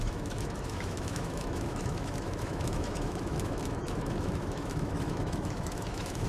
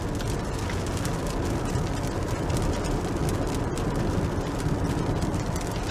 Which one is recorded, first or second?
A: second